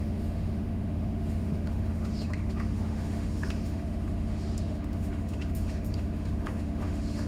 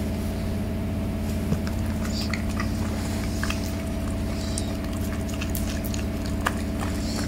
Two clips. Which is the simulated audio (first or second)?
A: first